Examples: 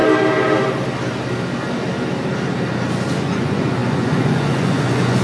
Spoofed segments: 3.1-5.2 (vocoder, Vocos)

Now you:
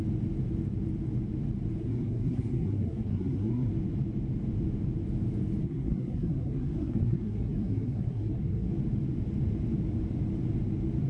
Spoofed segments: 1.8-3.7 (codec, SNAC); 5.6-8.7

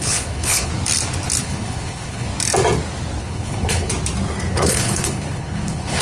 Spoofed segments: 0.0-0.7 (codec, HILCodec); 1.4-2.3; 3.2-3.9; 4.5-6.0

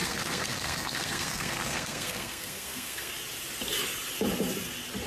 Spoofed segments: 0.0-3.1 (codec, SNAC)

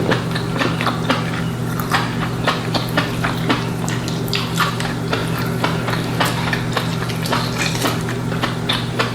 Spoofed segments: 0.0-5.2 (vocoder, BigVGAN v2); 6.2-9.1

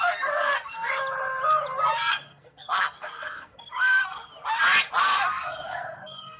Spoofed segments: 0.0-0.9 (codec, SNAC); 2.1-4.3; 5.0-6.4